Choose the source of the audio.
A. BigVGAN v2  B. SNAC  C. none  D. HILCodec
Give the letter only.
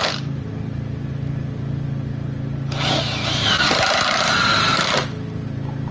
C